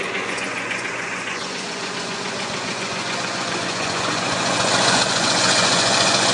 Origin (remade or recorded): remade